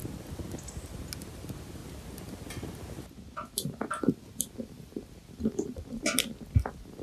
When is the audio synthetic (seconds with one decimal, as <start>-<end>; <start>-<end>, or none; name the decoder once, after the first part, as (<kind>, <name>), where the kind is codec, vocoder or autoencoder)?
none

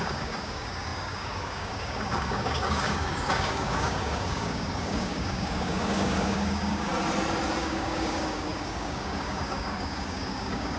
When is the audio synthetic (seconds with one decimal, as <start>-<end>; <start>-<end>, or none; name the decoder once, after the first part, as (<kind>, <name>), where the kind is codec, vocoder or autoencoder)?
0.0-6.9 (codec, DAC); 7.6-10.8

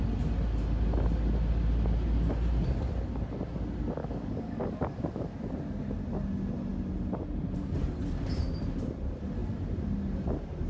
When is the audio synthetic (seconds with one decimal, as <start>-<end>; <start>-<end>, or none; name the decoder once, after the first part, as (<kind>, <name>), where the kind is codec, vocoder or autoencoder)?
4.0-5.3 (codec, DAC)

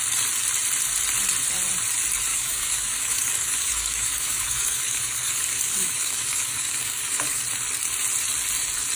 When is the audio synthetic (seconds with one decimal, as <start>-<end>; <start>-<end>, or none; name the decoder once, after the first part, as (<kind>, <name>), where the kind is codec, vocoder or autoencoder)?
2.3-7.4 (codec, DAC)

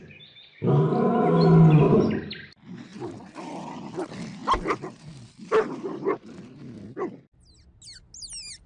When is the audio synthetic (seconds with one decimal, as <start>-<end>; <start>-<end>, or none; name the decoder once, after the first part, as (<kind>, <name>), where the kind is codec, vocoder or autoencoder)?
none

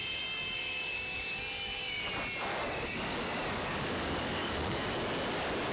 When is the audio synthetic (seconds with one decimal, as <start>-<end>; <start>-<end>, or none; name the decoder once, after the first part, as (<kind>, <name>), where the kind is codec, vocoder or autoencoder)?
0.0-2.1 (codec, DAC); 2.5-4.9

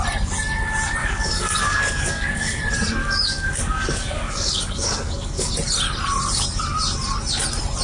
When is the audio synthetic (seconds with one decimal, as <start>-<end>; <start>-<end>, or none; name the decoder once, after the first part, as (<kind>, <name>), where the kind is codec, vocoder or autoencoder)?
1.0-2.6 (codec, DAC); 3.0-5.5

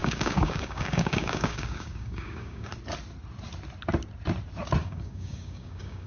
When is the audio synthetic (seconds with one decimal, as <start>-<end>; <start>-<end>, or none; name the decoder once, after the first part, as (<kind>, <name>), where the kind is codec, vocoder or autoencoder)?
0.0-2.7 (codec, DAC); 4.8-6.1